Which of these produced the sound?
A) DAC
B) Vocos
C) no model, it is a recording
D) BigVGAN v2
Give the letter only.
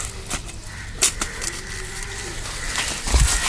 C